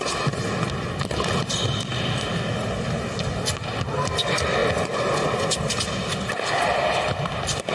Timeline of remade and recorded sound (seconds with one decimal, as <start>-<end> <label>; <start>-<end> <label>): 0.0-7.7 recorded